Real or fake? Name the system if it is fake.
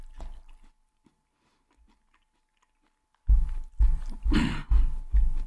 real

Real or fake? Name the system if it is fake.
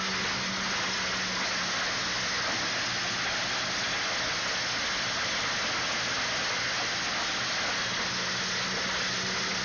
real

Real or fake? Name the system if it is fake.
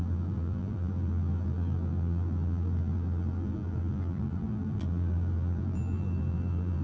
fake, vocoder, BigVGAN v2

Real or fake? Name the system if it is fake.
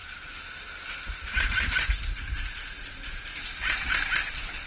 real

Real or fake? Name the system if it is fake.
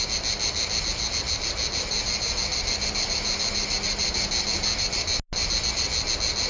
real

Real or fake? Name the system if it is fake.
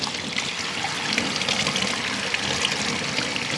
real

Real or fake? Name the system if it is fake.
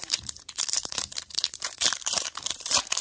fake, vocoder, BigVGAN v2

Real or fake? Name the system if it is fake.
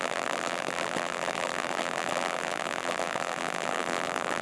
fake, vocoder, BigVGAN v2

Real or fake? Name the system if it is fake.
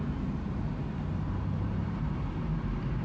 fake, vocoder, BigVGAN v2